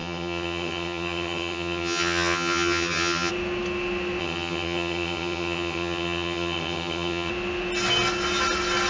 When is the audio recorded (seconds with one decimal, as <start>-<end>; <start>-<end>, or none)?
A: 3.3-4.2; 7.3-8.9